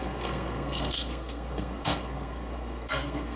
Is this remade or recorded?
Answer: remade